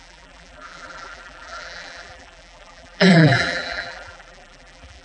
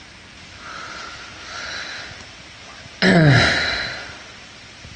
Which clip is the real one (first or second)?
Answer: second